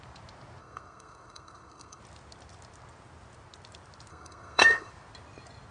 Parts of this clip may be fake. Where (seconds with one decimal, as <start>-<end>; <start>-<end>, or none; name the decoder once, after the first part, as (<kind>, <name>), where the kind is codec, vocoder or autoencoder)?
0.6-2.0 (codec, SNAC); 4.1-4.9